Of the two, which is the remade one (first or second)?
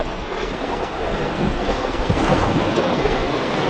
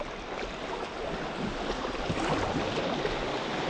first